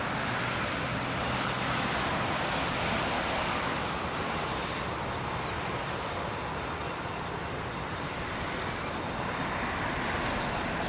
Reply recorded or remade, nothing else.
recorded